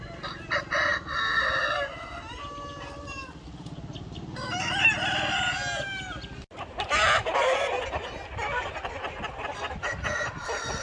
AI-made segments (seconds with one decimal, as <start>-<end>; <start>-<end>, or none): none